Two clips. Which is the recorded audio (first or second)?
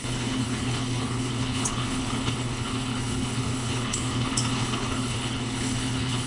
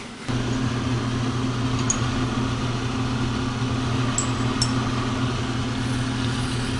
second